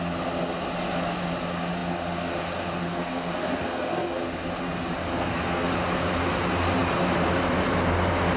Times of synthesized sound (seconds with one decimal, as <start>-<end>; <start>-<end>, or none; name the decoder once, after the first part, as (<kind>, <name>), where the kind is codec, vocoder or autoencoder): 2.9-4.2 (codec, SNAC); 5.1-5.7